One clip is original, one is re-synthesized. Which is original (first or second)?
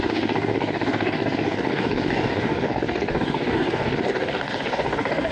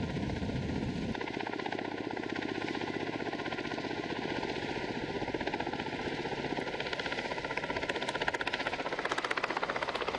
second